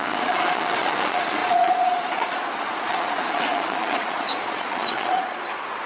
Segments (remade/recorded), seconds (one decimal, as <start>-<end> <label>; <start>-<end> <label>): 0.0-5.9 remade